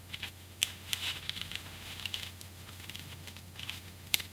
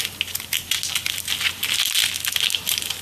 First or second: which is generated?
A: first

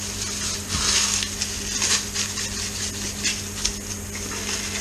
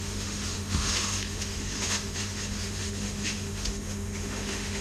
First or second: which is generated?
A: second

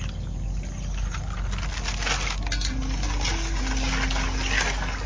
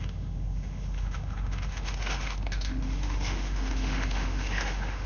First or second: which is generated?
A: second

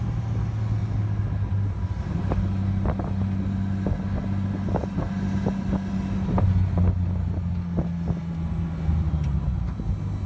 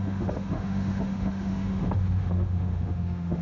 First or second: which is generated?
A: second